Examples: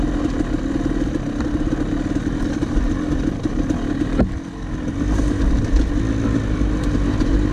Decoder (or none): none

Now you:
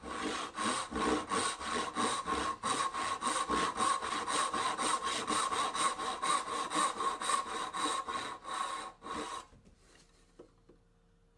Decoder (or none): none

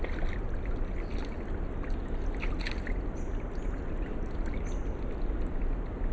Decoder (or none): none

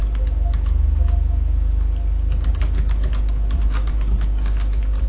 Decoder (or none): none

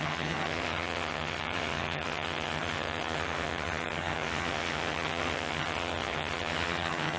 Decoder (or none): vocoder, HiFi-GAN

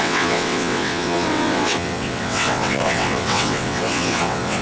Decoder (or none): vocoder, WaveNeXt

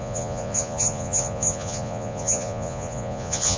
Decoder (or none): vocoder, Vocos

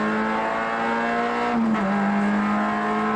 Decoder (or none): none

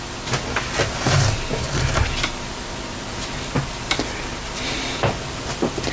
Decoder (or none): none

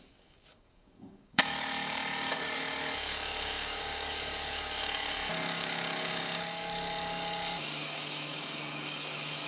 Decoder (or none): codec, DAC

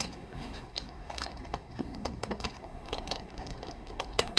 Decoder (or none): codec, SNAC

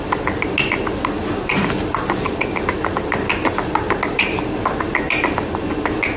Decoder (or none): none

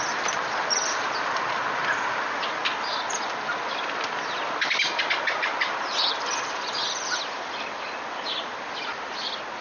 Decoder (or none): none